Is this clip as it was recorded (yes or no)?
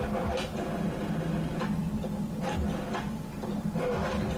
yes